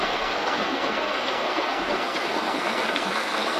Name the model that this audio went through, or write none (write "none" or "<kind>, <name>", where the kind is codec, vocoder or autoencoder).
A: codec, SNAC